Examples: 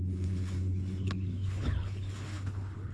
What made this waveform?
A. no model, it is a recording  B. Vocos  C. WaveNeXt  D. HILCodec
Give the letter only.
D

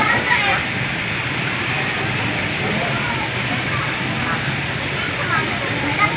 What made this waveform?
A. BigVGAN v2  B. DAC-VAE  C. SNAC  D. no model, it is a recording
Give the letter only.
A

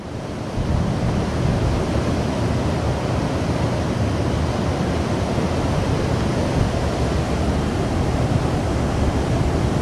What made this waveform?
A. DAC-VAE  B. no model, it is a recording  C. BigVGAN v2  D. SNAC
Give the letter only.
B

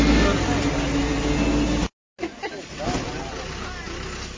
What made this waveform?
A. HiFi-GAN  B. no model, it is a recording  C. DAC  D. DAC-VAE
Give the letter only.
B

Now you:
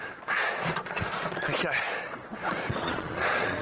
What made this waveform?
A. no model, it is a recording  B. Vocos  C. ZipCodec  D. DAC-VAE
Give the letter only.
B